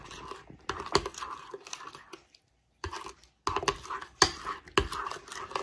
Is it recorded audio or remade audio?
recorded